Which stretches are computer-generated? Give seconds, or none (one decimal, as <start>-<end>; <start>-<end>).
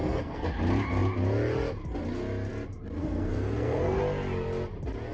0.0-0.5; 3.0-4.0